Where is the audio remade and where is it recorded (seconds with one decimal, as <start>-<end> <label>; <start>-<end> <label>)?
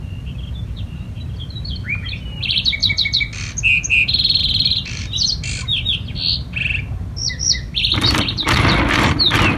0.0-2.8 remade; 2.8-4.4 recorded; 4.4-5.0 remade; 5.0-7.3 recorded; 7.3-9.6 remade